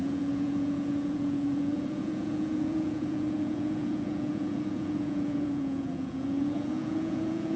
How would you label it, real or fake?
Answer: fake